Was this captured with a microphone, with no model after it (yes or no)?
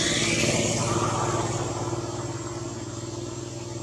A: yes